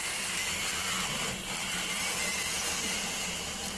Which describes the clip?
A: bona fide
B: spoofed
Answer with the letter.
A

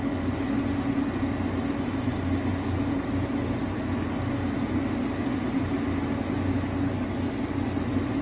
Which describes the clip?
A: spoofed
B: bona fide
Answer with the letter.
B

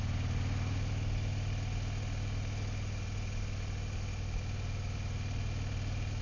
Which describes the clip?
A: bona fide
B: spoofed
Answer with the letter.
A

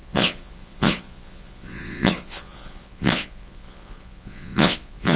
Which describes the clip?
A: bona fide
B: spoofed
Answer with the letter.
B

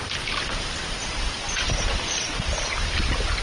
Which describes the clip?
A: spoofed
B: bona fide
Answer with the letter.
B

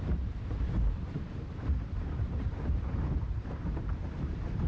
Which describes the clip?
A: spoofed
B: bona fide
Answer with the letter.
A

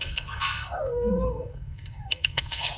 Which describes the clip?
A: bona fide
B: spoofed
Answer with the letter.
B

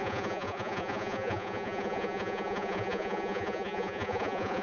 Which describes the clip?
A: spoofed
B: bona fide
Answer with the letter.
A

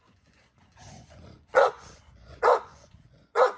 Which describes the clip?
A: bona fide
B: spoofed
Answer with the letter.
B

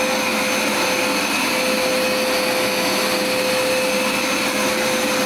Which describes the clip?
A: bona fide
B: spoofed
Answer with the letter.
A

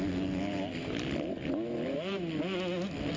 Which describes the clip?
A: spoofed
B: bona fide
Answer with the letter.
B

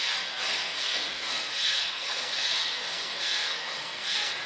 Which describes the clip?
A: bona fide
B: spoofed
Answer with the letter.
B